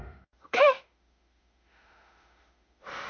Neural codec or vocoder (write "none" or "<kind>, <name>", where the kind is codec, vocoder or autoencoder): autoencoder, DAC-VAE